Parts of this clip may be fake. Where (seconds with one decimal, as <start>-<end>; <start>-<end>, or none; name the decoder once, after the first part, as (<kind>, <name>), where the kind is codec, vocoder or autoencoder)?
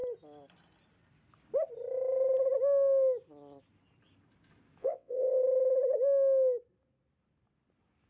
4.8-5.4 (vocoder, WaveNeXt)